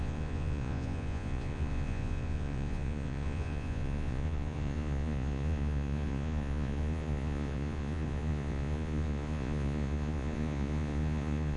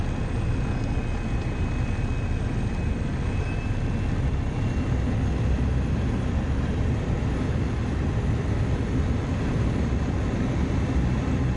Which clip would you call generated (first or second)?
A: first